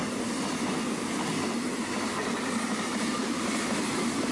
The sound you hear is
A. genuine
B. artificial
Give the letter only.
A